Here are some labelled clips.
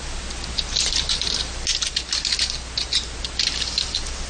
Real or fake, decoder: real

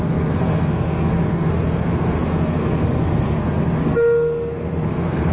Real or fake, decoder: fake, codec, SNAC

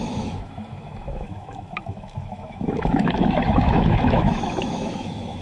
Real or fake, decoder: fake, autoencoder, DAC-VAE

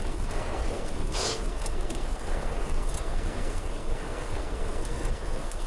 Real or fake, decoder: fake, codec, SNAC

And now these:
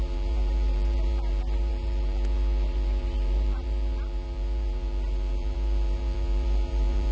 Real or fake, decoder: fake, vocoder, BigVGAN v2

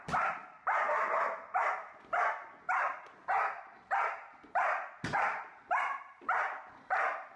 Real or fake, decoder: real